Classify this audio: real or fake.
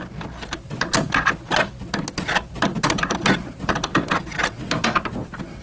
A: real